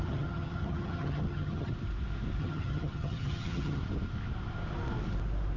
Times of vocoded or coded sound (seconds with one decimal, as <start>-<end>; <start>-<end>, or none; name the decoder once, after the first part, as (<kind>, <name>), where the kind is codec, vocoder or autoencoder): 0.0-1.7 (vocoder, HiFi-GAN); 2.4-3.8